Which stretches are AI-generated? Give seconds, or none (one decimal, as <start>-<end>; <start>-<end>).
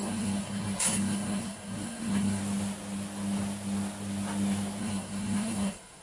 0.0-2.4; 4.8-6.0